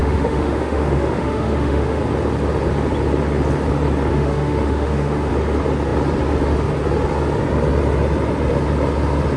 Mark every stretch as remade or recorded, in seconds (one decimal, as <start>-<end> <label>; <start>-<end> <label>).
0.0-2.0 remade; 2.0-4.1 recorded; 4.1-5.3 remade; 5.3-9.4 recorded